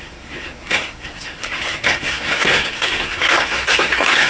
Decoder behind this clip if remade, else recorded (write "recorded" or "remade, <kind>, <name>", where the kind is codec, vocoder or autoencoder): remade, codec, SNAC